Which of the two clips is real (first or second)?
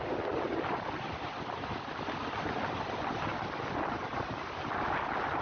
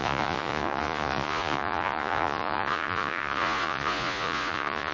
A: first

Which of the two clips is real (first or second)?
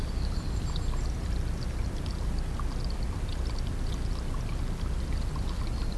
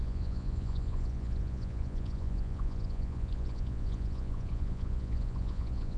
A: first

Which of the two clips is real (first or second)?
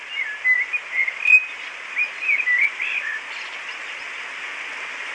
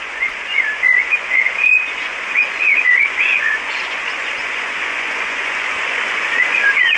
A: first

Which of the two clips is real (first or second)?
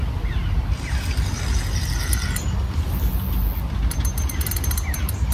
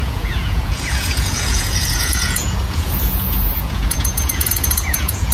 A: first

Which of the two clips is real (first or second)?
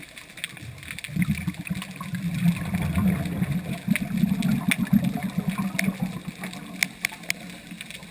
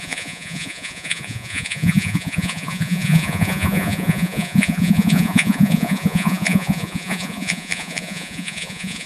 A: first